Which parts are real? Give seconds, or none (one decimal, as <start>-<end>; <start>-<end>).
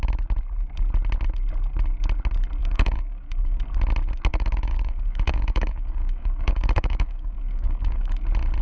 0.0-2.6; 3.6-4.3; 8.1-8.6